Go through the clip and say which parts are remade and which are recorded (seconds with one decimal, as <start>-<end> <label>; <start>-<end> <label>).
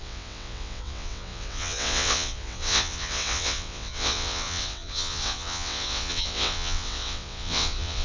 0.0-8.0 remade